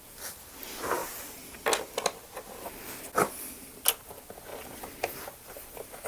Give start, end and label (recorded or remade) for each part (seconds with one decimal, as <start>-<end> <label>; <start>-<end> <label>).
0.0-6.1 recorded